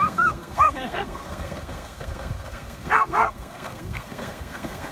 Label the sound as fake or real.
fake